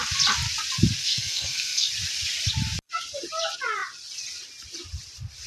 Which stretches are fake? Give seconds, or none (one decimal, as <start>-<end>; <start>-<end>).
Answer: 1.0-1.9